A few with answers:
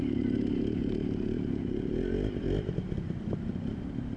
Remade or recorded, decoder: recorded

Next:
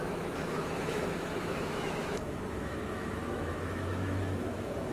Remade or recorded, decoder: remade, autoencoder, DAC-VAE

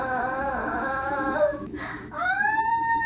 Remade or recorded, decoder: remade, autoencoder, DAC-VAE